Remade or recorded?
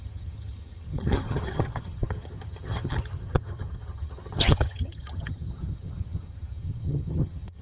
remade